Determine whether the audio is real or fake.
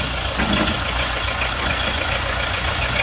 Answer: fake